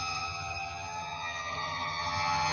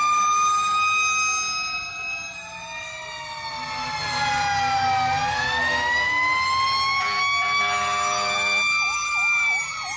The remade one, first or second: first